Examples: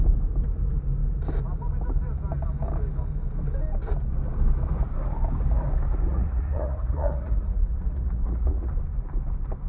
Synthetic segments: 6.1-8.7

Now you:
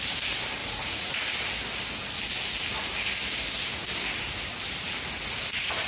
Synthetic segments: 0.6-1.2

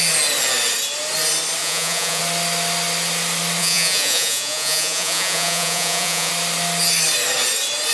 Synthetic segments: 1.6-2.2; 3.6-6.3

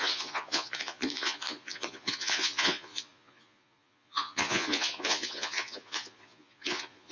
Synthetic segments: 0.0-7.1

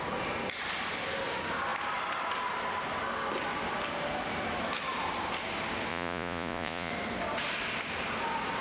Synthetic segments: 5.9-6.9

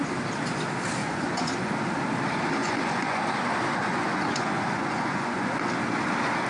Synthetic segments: 1.0-1.7; 2.6-3.2; 3.8-5.5

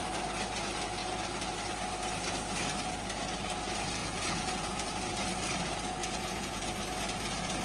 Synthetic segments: 4.0-4.9; 6.0-6.6

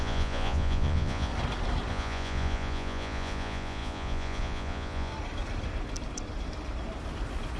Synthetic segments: 0.0-1.3; 1.9-5.1